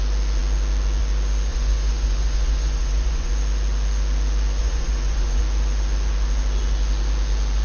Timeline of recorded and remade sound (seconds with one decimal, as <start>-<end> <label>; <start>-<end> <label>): 0.0-1.5 recorded; 1.5-3.3 remade; 3.3-4.6 recorded; 4.6-5.4 remade; 5.4-7.6 recorded